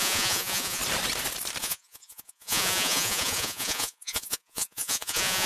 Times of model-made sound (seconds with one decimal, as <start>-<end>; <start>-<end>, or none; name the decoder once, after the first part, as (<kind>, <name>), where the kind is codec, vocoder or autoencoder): 0.0-0.8 (vocoder, Vocos); 1.6-5.5